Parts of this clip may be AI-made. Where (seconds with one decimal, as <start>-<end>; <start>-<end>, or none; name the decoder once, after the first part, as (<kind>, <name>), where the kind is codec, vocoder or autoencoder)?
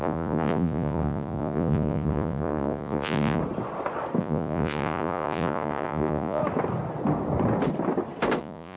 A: 0.0-3.4 (vocoder, Vocos); 4.2-6.4; 8.4-8.8